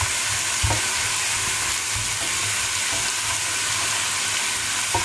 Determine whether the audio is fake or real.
real